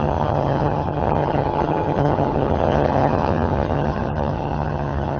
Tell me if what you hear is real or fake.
fake